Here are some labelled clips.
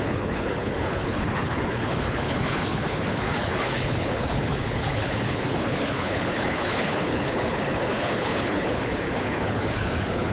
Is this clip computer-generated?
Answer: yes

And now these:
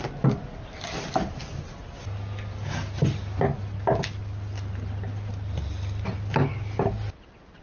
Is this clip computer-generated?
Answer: no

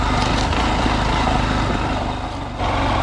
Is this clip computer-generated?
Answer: no